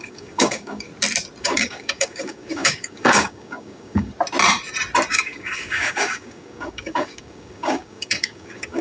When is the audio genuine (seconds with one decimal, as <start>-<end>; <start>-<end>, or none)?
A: 0.9-1.4; 4.1-5.1